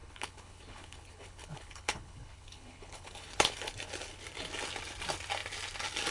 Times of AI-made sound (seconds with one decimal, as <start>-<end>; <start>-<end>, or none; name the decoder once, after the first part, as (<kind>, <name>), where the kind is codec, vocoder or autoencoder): 0.0-3.7 (codec, HILCodec)